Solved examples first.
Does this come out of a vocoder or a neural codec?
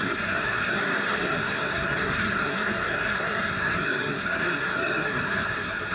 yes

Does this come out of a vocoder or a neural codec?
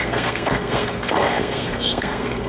yes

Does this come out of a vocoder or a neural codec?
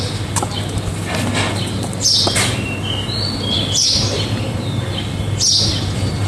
no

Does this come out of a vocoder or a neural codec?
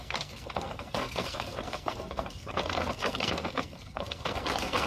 yes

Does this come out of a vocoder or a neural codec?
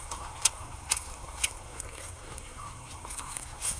yes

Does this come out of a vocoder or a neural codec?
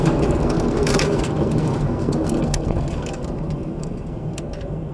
yes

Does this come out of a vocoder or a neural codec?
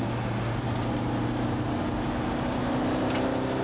no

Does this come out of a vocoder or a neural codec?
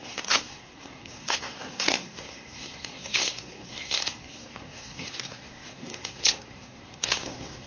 yes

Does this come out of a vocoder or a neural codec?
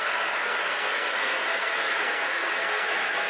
yes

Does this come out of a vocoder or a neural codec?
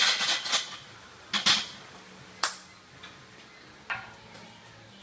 no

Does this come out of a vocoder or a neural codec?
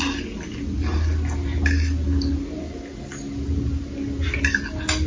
no